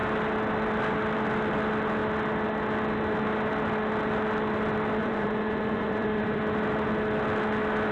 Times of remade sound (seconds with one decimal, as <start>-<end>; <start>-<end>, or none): 5.0-6.4